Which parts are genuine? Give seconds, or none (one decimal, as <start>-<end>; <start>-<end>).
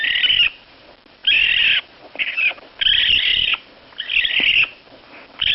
0.0-5.5